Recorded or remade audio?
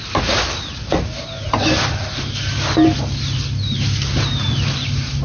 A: remade